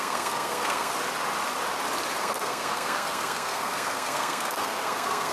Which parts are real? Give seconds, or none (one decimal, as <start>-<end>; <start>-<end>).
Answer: 0.9-2.2

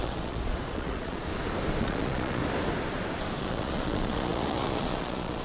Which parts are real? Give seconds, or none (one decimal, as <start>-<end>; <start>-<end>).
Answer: 1.3-1.8; 2.4-3.4

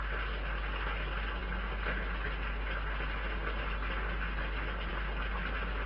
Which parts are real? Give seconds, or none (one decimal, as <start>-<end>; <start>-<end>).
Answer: 0.0-5.9

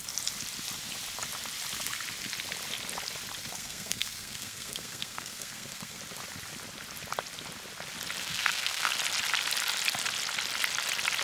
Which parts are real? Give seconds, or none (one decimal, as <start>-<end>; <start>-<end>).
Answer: 0.0-3.4; 6.0-8.2; 8.9-11.2

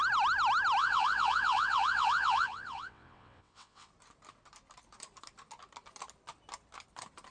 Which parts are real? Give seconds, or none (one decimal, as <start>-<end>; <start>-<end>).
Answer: 0.0-0.8; 3.9-7.3

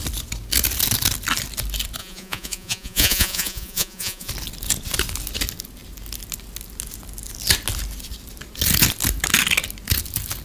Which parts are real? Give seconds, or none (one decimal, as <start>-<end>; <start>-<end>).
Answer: 0.0-2.0; 4.3-10.4

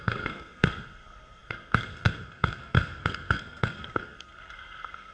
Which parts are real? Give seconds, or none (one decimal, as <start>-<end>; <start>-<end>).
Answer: none

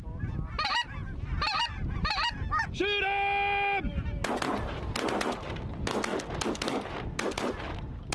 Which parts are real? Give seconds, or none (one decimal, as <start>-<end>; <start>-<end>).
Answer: 0.0-8.1